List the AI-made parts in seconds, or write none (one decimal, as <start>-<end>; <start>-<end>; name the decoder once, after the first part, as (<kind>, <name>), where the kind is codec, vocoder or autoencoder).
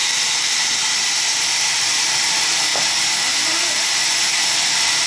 0.0-0.9 (vocoder, BigVGAN v2)